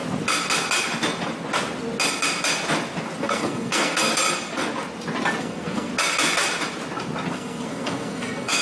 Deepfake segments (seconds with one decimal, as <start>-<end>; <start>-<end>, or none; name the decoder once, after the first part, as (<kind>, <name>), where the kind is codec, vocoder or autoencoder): 3.2-4.1 (codec, SNAC); 5.4-5.9; 7.3-8.6